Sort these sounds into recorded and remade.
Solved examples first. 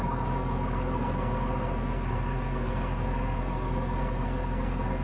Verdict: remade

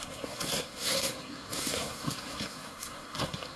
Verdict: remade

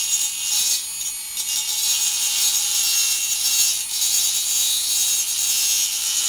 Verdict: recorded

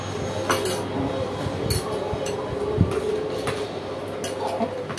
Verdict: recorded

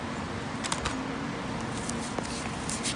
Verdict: recorded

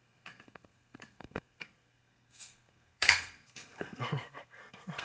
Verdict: remade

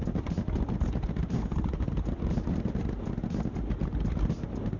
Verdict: recorded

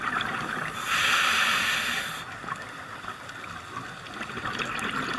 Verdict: recorded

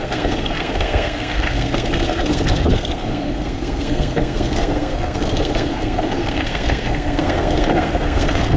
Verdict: remade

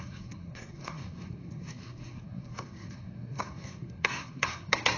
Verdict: remade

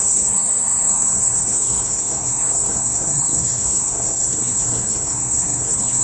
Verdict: remade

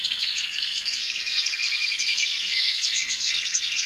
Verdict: remade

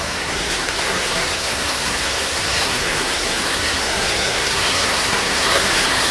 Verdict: remade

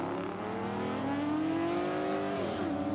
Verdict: recorded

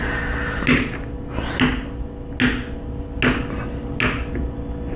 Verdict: recorded